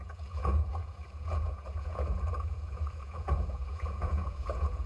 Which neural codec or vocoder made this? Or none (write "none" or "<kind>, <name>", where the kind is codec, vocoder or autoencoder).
vocoder, Vocos